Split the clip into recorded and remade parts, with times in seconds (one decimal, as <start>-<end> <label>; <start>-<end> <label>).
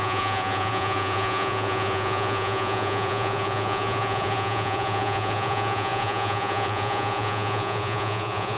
0.0-8.6 remade